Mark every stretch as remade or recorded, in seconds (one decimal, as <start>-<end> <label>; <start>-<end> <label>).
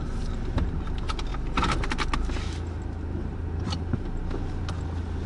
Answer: 0.0-5.3 recorded